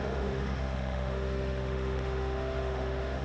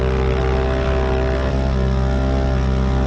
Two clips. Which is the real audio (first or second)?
second